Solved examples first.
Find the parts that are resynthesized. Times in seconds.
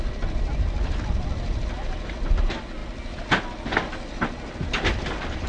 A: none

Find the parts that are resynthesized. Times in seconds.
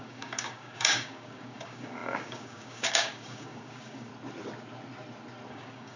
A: 0.0-4.1 (codec, DAC); 5.5-6.0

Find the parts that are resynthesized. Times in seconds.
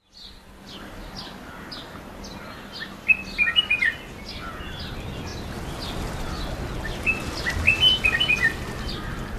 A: none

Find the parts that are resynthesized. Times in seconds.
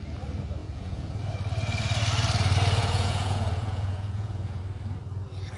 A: 0.6-1.2 (vocoder, Vocos); 2.8-4.6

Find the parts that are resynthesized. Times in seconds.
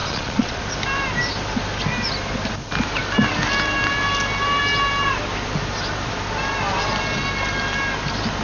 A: 0.0-0.6 (vocoder, Vocos)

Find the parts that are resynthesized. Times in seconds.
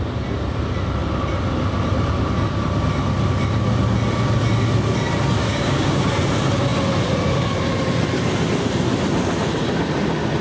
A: 5.4-6.1 (codec, DAC)